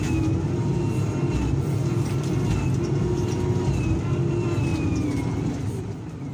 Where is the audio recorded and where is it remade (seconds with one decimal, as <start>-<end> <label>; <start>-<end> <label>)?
0.0-0.7 remade; 0.7-1.3 recorded; 1.3-1.8 remade; 1.8-4.3 recorded; 4.3-4.7 remade; 4.7-5.3 recorded; 5.3-6.3 remade